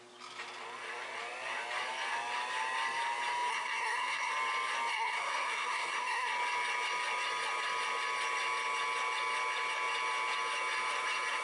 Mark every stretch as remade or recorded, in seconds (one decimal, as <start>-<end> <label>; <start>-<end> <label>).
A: 0.0-3.5 recorded; 3.5-4.3 remade; 4.3-4.9 recorded; 4.9-6.3 remade; 6.3-11.4 recorded

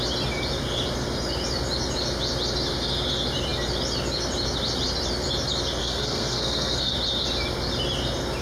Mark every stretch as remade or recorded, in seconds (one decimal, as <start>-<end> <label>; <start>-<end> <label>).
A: 0.0-5.8 recorded; 5.8-6.9 remade; 6.9-8.4 recorded